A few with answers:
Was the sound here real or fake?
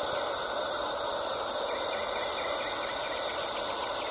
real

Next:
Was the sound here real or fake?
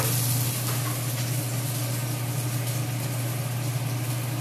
real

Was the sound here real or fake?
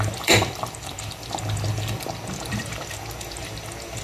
fake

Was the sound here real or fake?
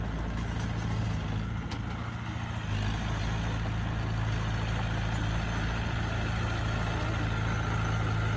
real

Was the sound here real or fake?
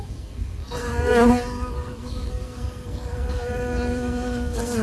fake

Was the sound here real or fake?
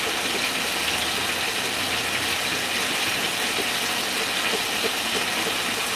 real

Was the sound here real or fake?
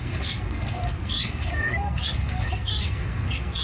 fake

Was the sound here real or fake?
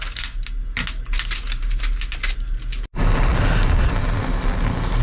real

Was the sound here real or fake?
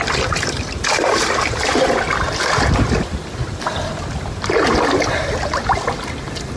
real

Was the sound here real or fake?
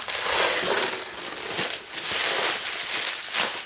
real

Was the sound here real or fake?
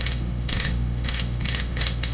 fake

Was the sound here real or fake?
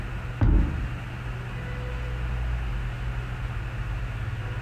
real